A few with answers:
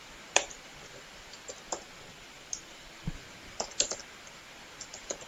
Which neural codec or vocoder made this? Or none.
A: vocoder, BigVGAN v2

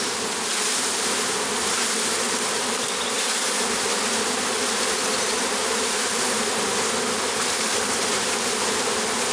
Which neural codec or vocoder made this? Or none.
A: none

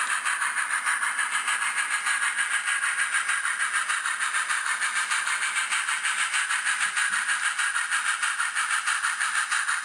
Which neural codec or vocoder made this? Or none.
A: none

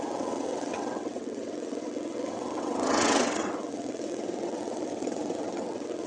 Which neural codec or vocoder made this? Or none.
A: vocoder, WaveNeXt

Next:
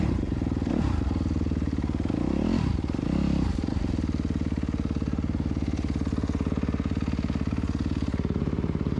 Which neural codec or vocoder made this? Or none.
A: none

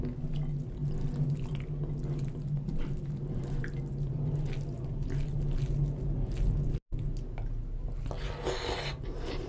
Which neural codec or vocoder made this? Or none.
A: none